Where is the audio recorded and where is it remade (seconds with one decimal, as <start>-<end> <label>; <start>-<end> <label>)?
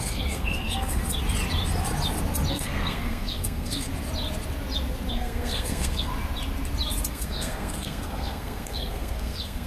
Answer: 0.0-1.0 remade; 1.0-2.5 recorded; 2.5-3.9 remade; 3.9-5.1 recorded; 5.1-6.1 remade; 6.1-7.1 recorded; 7.1-9.7 remade